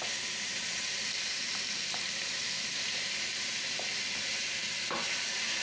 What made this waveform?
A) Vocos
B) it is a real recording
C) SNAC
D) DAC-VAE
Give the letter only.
B